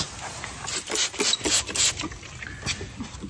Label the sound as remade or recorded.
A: recorded